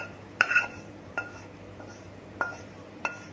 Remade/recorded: remade